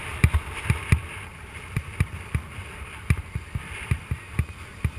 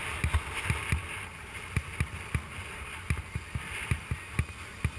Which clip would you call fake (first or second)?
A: first